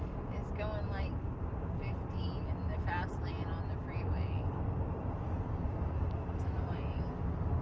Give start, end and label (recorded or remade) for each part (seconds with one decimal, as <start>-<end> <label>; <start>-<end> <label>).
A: 0.0-7.6 recorded